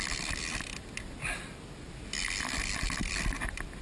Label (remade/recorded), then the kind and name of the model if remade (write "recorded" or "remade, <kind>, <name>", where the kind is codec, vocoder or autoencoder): recorded